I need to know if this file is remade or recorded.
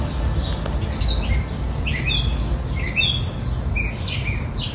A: recorded